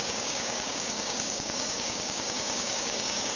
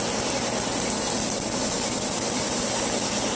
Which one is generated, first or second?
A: first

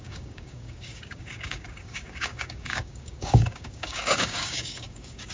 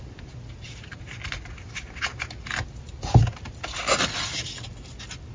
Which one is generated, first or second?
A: first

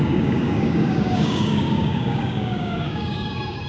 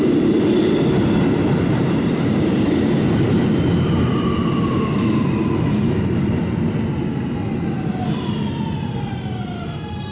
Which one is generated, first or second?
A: first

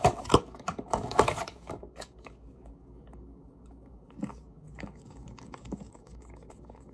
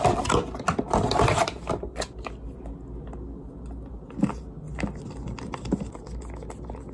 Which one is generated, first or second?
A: first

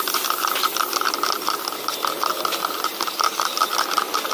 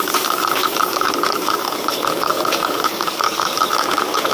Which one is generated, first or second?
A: second